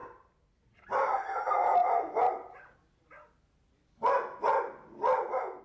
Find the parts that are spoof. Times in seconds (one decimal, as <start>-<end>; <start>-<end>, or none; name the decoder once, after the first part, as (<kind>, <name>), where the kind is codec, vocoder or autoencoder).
none